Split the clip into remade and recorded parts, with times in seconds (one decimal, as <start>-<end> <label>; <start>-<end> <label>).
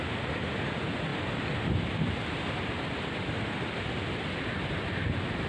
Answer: 0.0-5.5 recorded